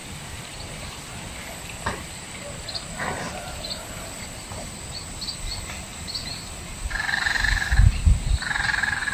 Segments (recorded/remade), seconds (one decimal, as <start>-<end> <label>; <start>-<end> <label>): 0.0-4.0 remade; 4.0-9.1 recorded